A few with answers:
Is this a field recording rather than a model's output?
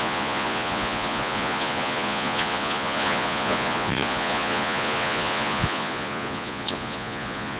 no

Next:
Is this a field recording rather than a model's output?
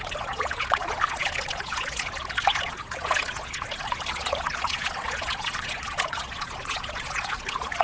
no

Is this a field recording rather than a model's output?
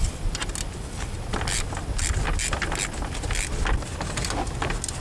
yes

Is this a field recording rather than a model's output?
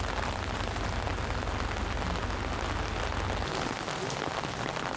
yes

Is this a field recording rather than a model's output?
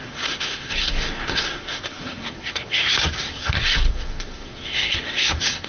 no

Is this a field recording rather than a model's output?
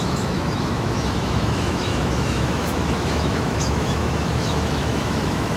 no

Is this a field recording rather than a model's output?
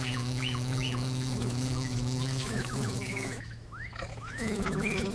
no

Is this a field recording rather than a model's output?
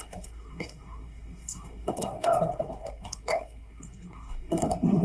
no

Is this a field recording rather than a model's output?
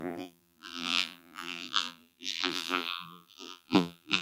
no